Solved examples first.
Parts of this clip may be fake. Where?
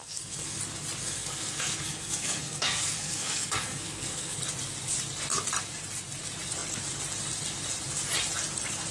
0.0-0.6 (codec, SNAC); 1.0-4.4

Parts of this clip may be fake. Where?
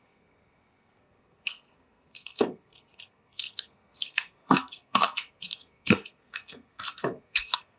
0.0-7.8 (codec, SNAC)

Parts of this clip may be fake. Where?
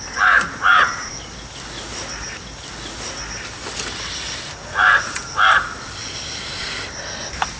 none